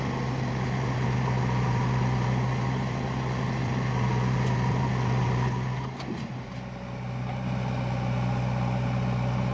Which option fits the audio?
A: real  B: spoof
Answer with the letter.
A